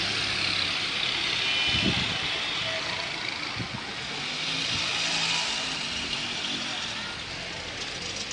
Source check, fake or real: real